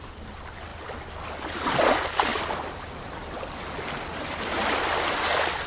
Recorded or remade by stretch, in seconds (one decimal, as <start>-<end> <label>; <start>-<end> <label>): 0.0-5.7 recorded